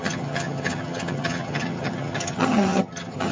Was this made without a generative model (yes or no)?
no